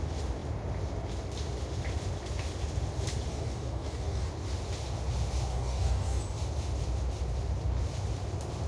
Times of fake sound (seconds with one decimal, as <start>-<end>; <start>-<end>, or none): 3.3-4.3; 5.5-6.2